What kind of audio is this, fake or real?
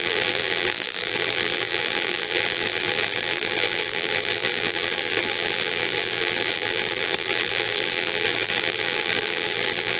fake